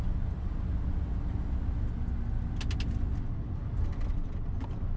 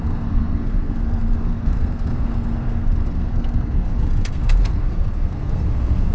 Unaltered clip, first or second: first